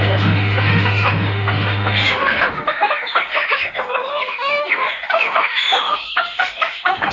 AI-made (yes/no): yes